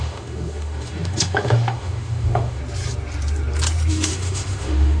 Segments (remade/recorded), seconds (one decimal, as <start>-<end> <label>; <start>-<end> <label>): 0.0-2.6 remade; 2.6-3.9 recorded; 3.9-5.0 remade